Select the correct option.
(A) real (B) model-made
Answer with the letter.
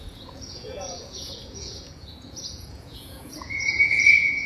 B